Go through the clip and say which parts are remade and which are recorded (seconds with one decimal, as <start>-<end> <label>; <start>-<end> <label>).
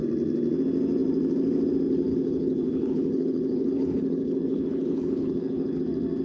0.0-2.1 recorded; 2.1-5.8 remade; 5.8-6.2 recorded